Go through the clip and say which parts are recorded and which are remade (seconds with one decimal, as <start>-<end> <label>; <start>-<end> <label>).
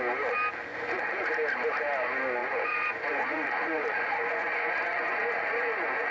0.0-0.7 recorded; 0.7-1.3 remade; 1.3-2.4 recorded; 2.4-6.1 remade